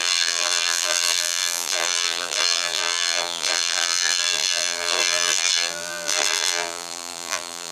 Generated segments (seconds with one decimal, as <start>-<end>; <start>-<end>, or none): 0.0-7.7